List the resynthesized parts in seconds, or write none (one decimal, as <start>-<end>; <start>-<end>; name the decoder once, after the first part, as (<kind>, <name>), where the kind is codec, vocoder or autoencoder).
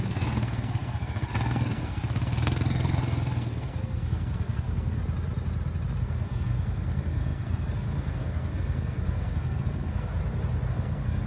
0.0-5.0 (codec, SNAC); 6.0-10.1; 10.7-11.3